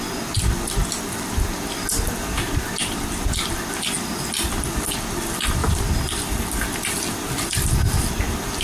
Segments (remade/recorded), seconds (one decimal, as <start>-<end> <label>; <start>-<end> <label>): 0.0-5.6 recorded; 5.6-7.2 remade; 7.2-8.6 recorded